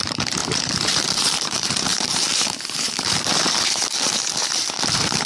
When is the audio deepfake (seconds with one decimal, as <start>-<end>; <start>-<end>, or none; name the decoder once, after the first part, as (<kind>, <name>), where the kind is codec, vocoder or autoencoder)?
0.0-5.2 (vocoder, BigVGAN v2)